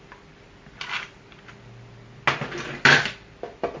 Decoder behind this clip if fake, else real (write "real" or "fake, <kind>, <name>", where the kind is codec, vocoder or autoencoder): real